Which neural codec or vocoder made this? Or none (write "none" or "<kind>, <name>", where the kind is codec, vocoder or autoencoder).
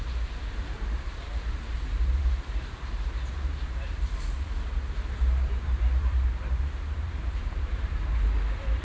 vocoder, BigVGAN v2